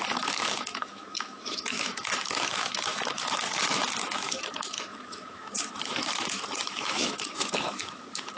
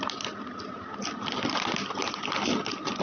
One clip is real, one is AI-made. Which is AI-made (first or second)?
first